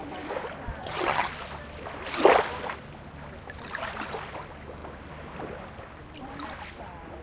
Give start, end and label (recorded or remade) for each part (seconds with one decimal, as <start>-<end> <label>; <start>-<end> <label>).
0.0-0.8 recorded; 0.8-1.3 remade; 1.3-7.2 recorded